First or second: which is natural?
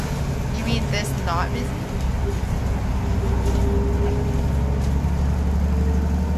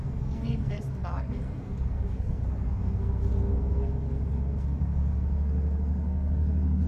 first